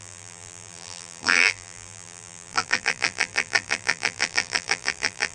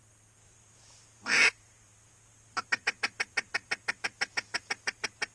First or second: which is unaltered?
second